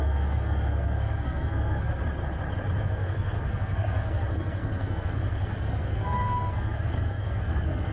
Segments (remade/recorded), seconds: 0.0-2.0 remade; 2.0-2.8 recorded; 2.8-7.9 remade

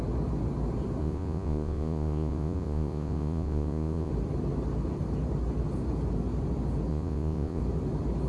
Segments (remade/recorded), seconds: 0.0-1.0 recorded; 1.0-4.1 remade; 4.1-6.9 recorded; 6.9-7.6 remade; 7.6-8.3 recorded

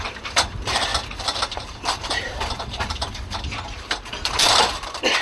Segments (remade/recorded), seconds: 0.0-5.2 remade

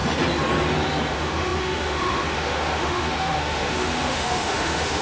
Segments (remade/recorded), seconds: 0.0-1.1 recorded; 1.1-5.0 remade

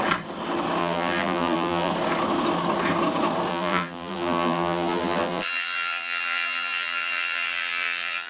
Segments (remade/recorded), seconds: 0.0-0.8 recorded; 0.8-1.9 remade; 1.9-3.5 recorded; 3.5-8.3 remade